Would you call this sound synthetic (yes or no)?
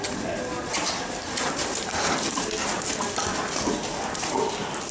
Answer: no